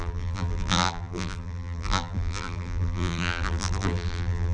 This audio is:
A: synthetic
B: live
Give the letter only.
A